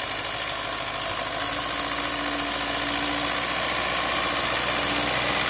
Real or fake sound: real